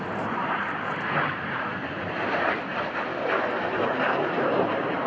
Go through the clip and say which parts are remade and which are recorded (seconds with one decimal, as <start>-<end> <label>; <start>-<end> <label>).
0.0-3.1 remade; 3.1-3.6 recorded; 3.6-5.1 remade